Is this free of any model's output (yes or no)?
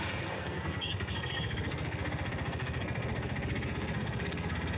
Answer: no